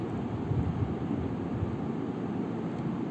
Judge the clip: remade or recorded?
recorded